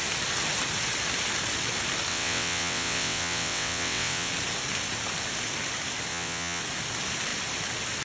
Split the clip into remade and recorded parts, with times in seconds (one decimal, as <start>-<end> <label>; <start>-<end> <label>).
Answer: 0.0-2.1 recorded; 2.1-4.3 remade; 4.3-6.1 recorded; 6.1-6.6 remade; 6.6-8.0 recorded